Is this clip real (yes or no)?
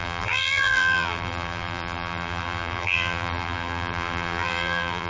no